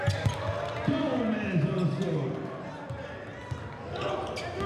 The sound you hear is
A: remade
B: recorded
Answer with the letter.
B